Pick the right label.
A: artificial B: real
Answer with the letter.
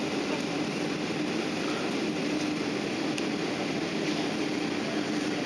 B